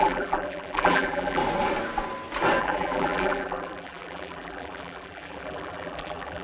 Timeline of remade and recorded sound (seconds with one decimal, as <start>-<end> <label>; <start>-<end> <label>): 0.0-1.4 remade; 1.4-2.6 recorded; 2.6-6.4 remade